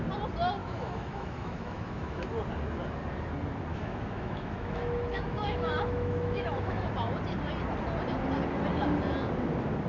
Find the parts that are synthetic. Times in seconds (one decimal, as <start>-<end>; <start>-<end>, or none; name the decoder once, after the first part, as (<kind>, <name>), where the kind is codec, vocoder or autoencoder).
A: 0.6-2.2 (autoencoder, DAC-VAE); 3.7-6.9